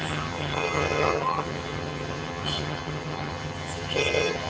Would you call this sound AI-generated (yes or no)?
yes